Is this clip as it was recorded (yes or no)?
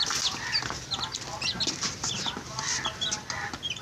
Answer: yes